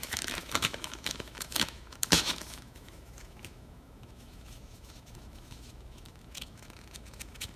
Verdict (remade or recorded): remade